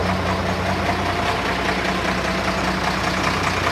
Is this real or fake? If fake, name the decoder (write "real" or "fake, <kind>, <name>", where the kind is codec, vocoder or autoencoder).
real